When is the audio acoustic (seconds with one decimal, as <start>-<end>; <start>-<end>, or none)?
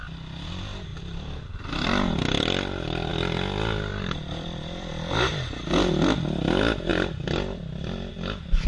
0.0-0.9; 3.1-3.9; 4.9-6.9; 8.1-8.7